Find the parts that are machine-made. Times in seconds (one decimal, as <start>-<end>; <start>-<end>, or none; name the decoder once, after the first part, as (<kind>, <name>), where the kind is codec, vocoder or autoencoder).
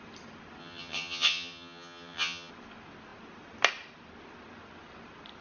0.6-2.5 (vocoder, HiFi-GAN)